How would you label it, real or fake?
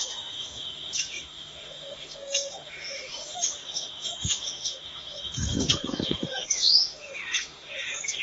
fake